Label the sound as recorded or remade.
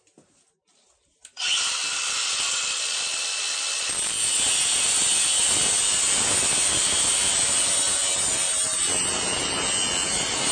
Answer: recorded